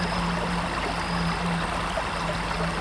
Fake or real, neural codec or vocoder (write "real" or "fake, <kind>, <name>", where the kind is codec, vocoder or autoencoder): real